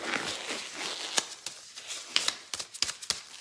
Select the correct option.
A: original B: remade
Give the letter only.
A